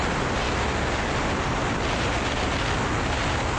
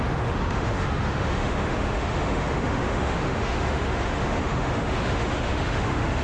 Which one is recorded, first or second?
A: first